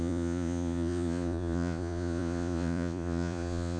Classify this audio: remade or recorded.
remade